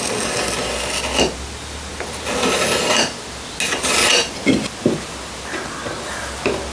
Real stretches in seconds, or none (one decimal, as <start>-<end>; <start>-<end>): 0.0-6.7